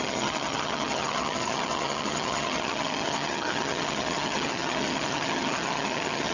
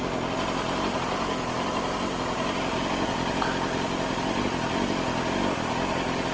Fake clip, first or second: first